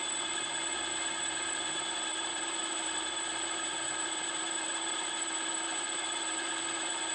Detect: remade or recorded remade